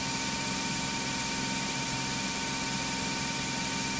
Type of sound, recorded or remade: recorded